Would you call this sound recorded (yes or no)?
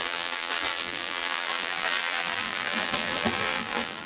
no